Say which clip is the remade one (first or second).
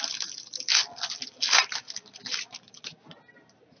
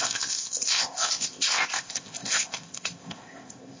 second